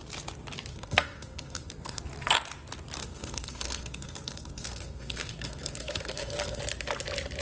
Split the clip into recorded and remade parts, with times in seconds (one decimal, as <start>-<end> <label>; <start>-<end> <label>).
0.0-0.7 recorded; 0.7-2.0 remade; 2.0-3.0 recorded; 3.0-6.6 remade; 6.6-7.4 recorded